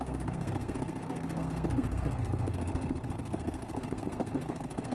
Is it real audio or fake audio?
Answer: fake